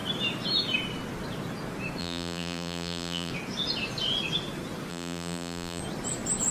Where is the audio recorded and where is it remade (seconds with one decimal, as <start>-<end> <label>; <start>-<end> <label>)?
0.0-2.0 recorded; 2.0-3.3 remade; 3.3-4.9 recorded; 4.9-5.8 remade; 5.8-6.5 recorded